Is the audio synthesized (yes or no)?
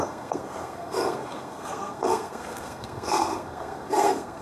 yes